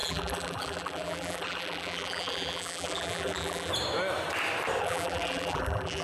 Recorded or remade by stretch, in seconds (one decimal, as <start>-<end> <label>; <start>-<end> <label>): 0.0-3.7 remade; 3.7-4.8 recorded; 4.8-6.0 remade